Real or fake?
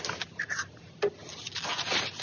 real